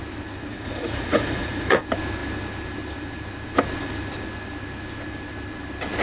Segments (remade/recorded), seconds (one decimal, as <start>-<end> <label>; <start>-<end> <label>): 0.0-0.5 recorded; 0.5-1.8 remade; 1.8-6.0 recorded